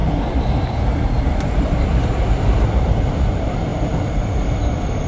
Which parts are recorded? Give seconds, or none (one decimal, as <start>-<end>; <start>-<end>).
none